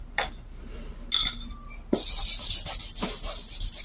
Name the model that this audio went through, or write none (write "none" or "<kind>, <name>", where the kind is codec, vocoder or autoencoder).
none